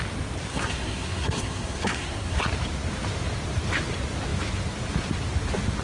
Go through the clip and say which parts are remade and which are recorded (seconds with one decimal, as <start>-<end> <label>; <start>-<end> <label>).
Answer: 0.0-0.5 recorded; 0.5-2.4 remade; 2.4-5.8 recorded